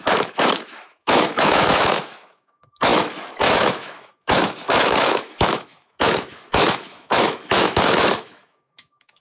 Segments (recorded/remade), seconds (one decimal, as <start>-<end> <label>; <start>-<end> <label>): 0.0-9.2 remade